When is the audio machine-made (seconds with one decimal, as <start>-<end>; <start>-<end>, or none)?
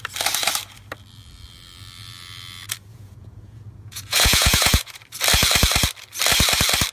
2.9-5.0